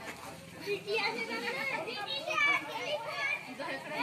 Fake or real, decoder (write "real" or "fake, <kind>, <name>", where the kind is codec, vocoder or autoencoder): real